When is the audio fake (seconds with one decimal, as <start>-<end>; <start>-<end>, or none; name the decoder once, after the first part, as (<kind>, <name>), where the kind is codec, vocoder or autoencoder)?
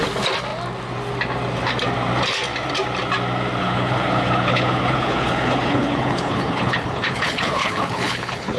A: 3.6-8.6 (codec, HILCodec)